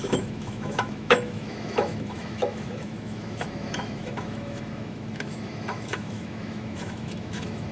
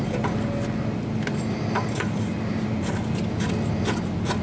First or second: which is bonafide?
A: second